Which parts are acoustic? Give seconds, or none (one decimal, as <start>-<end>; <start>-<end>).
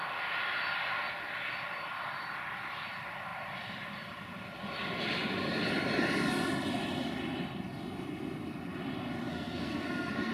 0.0-9.3